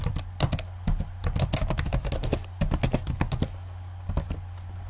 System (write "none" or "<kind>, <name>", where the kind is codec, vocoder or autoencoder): none